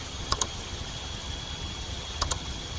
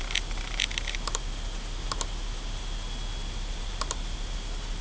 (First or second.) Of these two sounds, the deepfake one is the first